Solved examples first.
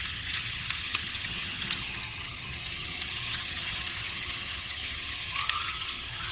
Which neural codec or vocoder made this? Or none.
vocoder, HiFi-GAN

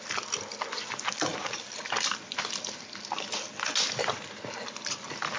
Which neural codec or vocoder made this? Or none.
none